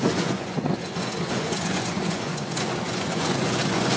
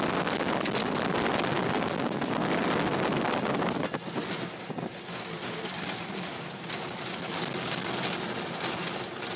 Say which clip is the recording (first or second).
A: second